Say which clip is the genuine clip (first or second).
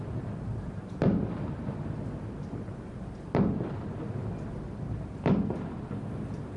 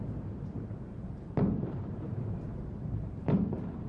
first